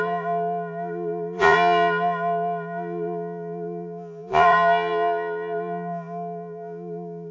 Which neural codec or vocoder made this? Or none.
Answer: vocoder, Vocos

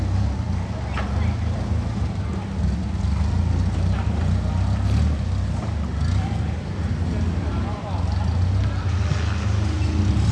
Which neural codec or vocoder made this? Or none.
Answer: none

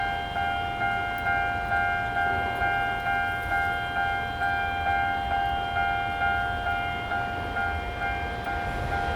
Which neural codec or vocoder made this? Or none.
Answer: none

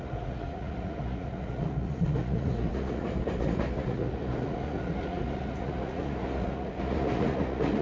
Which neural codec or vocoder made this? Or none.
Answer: vocoder, Vocos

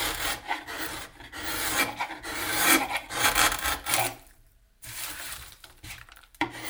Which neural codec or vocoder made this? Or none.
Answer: vocoder, BigVGAN v2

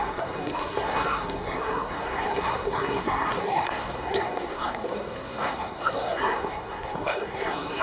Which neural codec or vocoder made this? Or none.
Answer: codec, SNAC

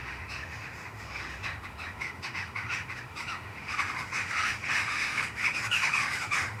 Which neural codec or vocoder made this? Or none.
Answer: autoencoder, DAC-VAE